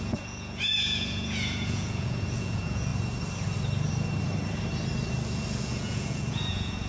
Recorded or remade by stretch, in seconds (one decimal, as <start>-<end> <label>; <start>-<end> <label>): 0.0-2.9 remade; 2.9-5.6 recorded; 5.6-6.9 remade